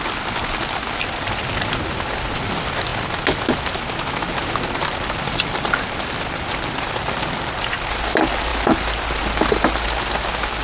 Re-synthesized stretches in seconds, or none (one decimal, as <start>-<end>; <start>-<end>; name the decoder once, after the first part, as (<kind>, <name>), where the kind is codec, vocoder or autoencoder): none